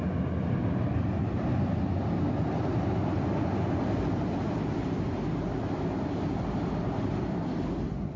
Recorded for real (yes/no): yes